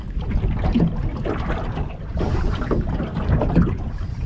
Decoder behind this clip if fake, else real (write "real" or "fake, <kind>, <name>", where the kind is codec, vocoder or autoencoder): real